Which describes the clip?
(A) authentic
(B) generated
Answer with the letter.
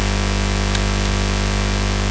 A